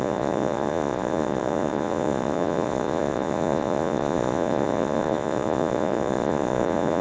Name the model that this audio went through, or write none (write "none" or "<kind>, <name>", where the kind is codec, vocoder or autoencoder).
vocoder, Vocos